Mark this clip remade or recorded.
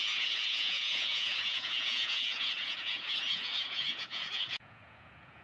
remade